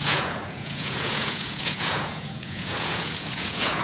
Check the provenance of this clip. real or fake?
fake